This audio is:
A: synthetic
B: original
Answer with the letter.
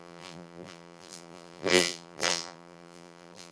A